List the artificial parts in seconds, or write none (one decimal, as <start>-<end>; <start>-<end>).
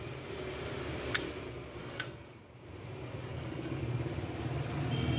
1.8-2.4; 3.3-3.8